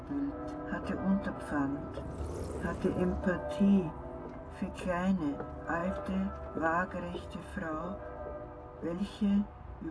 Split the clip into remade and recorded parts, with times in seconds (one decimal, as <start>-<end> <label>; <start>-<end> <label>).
0.0-9.9 recorded